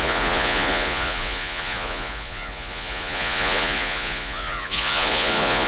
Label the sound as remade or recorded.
remade